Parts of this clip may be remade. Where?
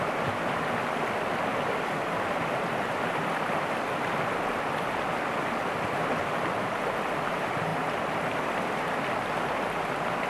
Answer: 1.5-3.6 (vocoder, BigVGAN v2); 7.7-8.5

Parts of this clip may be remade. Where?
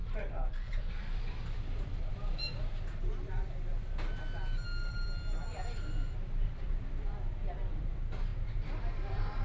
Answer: 0.0-3.7 (vocoder, BigVGAN v2); 4.9-9.4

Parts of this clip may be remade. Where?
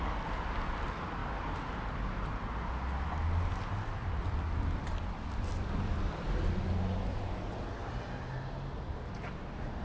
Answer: 4.0-6.5 (vocoder, BigVGAN v2)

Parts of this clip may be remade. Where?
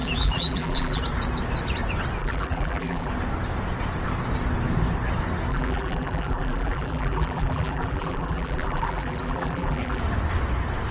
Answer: 0.0-1.0 (vocoder, BigVGAN v2); 2.2-3.1; 5.5-10.0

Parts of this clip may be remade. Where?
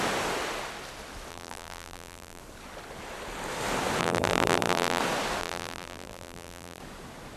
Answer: 1.3-2.4 (vocoder, BigVGAN v2); 4.0-5.0; 5.4-6.8